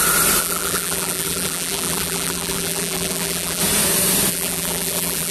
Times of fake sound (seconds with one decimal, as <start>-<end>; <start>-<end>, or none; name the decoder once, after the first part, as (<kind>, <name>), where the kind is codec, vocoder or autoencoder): 0.4-3.6 (vocoder, BigVGAN v2); 4.3-5.3